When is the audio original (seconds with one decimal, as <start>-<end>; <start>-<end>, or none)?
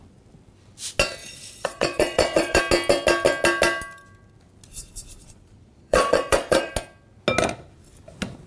0.0-1.2; 2.6-5.2; 6.7-8.5